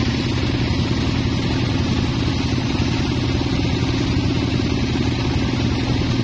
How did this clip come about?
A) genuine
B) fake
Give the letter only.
A